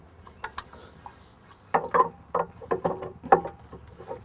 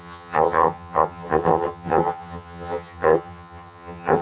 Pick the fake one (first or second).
second